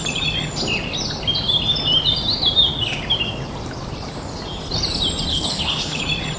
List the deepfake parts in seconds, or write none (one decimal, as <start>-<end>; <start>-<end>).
5.3-6.0